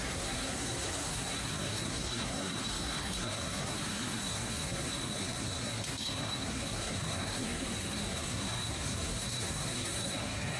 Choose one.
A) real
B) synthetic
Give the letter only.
B